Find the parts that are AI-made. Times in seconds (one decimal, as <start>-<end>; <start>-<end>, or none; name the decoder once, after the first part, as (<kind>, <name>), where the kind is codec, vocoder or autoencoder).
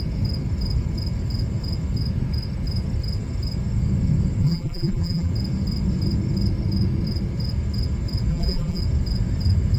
4.4-5.3 (vocoder, BigVGAN v2); 8.3-8.8